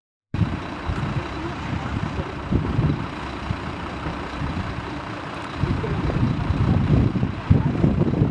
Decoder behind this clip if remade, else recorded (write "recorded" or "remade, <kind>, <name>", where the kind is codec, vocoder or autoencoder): remade, vocoder, BigVGAN v2